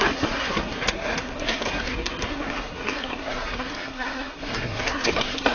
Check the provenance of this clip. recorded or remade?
remade